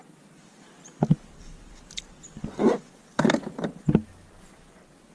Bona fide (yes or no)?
yes